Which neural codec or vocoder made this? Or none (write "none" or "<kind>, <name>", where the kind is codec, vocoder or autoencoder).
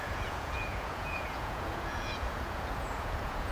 vocoder, Vocos